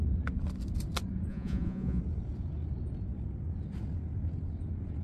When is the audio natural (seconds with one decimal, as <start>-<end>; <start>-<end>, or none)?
0.0-1.3; 2.0-5.0